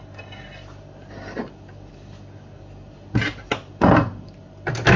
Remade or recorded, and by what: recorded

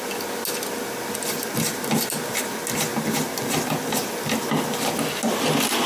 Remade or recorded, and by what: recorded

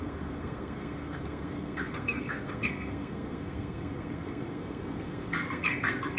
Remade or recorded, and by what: remade, codec, SNAC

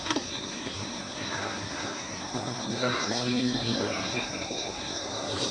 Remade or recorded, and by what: remade, codec, SNAC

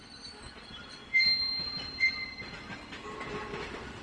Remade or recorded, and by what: recorded